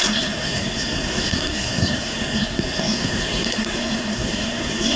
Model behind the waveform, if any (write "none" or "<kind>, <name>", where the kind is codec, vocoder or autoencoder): codec, SNAC